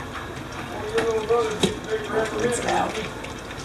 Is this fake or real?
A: real